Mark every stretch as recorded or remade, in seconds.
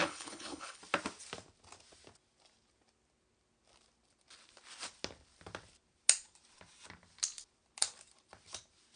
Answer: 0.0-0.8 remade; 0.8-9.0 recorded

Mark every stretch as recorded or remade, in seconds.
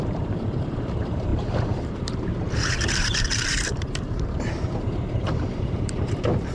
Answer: 0.0-6.5 remade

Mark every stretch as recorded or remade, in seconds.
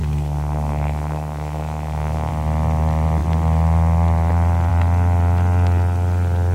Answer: 0.0-2.3 remade; 2.3-6.5 recorded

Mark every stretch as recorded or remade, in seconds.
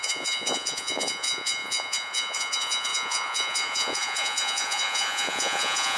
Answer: 0.0-6.0 remade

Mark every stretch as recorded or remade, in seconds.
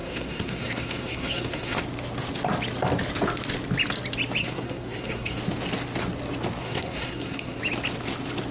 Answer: 0.0-1.8 remade; 1.8-4.4 recorded; 4.4-5.4 remade; 5.4-6.6 recorded; 6.6-7.6 remade; 7.6-8.5 recorded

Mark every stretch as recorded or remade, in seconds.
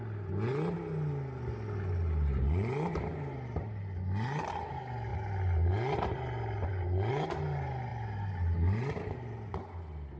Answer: 0.0-2.4 recorded; 2.4-3.8 remade; 3.8-7.9 recorded; 7.9-9.5 remade; 9.5-10.2 recorded